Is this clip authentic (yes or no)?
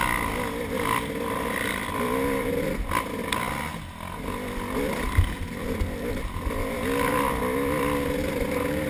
yes